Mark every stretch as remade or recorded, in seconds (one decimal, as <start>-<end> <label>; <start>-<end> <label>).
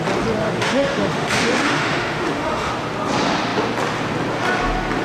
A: 0.0-0.4 recorded; 0.4-2.7 remade; 2.7-5.0 recorded